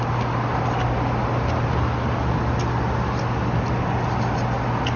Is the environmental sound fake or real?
real